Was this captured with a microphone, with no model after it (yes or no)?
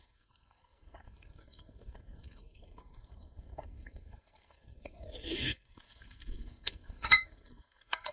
no